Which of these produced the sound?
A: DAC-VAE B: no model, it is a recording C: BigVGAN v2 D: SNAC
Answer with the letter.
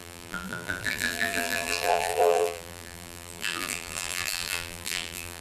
C